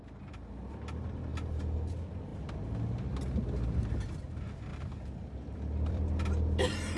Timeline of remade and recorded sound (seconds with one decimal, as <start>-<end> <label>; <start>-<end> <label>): 0.0-4.7 recorded; 4.7-7.0 remade